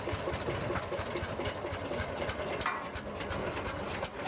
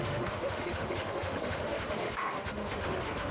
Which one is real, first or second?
first